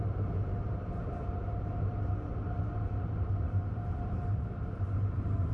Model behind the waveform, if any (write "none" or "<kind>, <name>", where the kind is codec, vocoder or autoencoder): vocoder, BigVGAN v2